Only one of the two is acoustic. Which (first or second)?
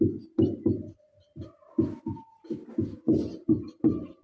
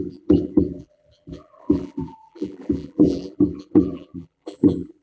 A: first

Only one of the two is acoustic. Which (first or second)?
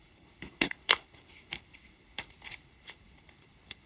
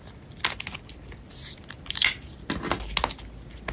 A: second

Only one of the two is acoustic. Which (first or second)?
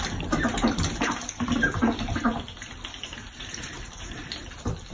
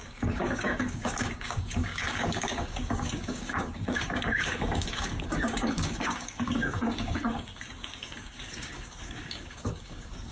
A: first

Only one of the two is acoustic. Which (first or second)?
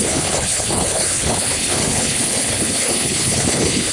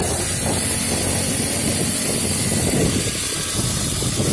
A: second